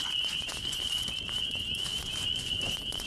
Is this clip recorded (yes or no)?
no